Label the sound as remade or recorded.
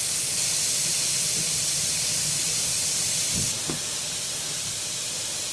recorded